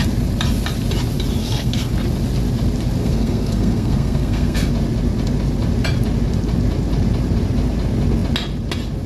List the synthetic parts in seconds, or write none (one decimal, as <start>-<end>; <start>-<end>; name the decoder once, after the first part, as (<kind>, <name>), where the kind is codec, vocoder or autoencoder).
1.4-1.9 (codec, SNAC); 3.0-4.7